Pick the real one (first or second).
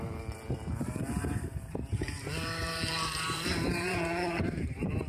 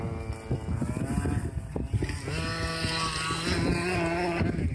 second